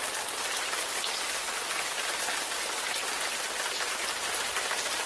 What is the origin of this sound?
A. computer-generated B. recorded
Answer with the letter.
B